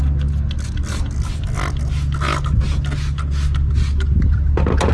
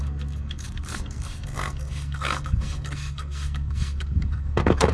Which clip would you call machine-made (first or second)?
second